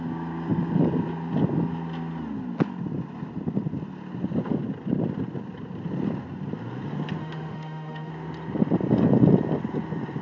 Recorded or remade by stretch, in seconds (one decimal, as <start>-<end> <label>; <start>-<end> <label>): 0.0-7.2 recorded; 7.2-8.1 remade; 8.1-10.2 recorded